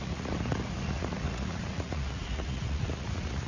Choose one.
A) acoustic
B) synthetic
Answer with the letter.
B